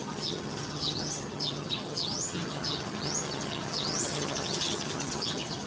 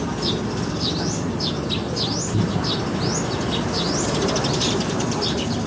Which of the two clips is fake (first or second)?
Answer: first